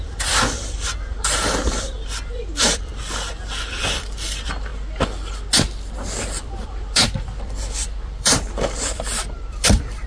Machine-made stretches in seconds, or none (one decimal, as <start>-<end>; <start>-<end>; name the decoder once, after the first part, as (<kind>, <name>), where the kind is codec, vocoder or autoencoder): 0.0-2.9 (vocoder, BigVGAN v2); 3.6-4.7; 6.2-10.1